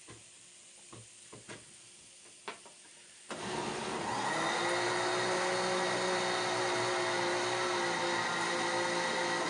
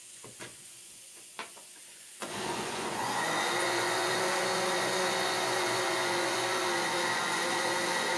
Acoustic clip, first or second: first